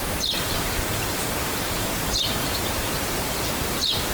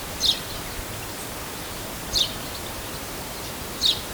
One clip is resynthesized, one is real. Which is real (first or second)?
second